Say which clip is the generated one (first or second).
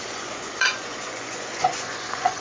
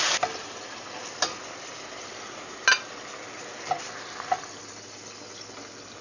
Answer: first